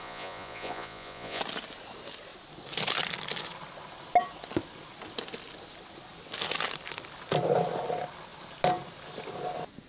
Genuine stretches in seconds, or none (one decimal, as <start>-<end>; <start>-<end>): 1.4-9.9